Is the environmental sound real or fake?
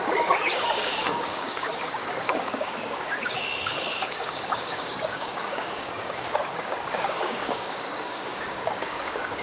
fake